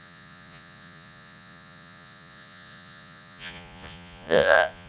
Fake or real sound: fake